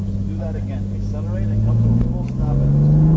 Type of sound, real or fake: real